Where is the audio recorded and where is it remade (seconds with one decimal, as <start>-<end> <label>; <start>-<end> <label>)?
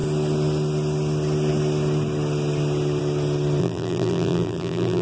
0.0-3.6 recorded; 3.6-5.0 remade